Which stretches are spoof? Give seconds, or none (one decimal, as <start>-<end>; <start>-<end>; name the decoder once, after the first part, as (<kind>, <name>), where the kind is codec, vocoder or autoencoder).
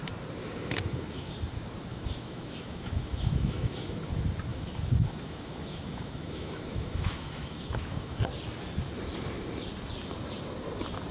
0.4-1.3 (autoencoder, DAC-VAE); 1.9-4.0; 4.5-8.2